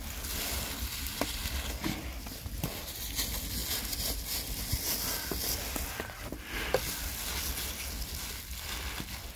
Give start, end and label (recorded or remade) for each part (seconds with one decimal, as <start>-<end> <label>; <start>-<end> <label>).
0.0-9.4 recorded